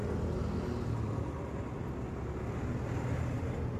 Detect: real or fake real